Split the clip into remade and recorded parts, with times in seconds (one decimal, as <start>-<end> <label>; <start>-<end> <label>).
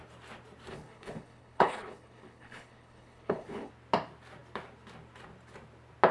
0.0-0.7 recorded; 0.7-3.7 remade; 3.7-6.1 recorded